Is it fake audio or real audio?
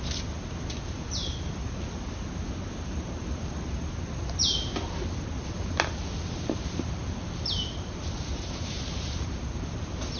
real